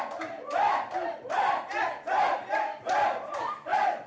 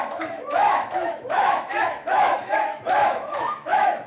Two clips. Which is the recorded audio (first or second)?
first